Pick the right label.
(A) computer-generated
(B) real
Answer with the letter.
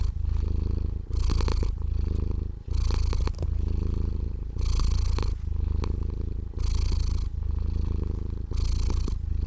B